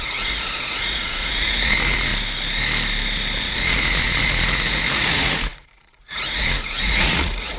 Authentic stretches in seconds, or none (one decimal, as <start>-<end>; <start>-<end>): 2.1-3.4